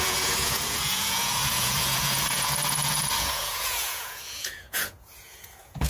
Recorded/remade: remade